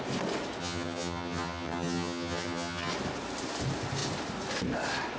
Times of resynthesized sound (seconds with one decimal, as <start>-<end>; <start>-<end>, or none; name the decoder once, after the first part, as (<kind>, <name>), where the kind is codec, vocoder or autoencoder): 0.6-2.9 (vocoder, HiFi-GAN)